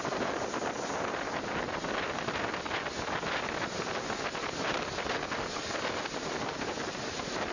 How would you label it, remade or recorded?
recorded